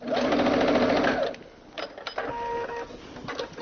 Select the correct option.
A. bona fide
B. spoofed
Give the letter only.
A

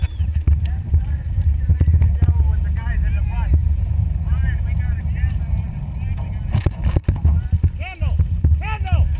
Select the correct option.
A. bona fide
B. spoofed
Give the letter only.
A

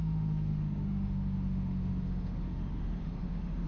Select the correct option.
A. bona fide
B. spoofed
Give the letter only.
B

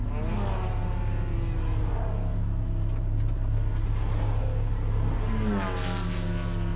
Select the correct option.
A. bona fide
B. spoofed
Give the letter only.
A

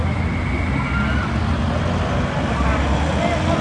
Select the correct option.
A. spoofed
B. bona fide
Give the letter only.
B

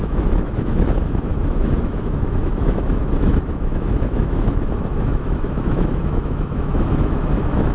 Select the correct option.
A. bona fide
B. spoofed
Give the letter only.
B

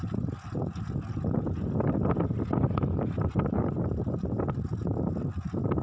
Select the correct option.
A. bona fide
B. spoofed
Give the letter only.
A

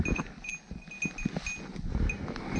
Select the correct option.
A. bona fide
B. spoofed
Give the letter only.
A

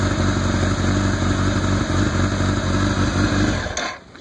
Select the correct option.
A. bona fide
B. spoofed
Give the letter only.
A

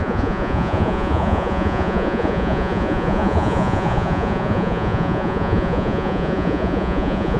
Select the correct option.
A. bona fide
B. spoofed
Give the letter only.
B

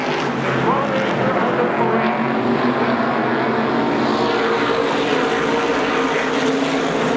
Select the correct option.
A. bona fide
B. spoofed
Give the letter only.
A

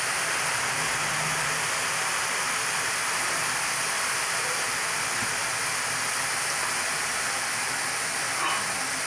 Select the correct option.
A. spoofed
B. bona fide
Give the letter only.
B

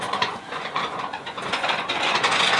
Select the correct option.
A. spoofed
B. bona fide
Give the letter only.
A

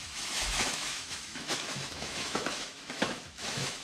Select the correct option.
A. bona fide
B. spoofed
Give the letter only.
B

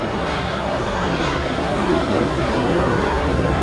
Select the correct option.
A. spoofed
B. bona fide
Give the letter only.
A